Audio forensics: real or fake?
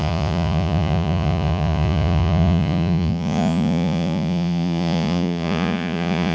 fake